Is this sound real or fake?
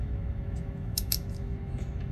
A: fake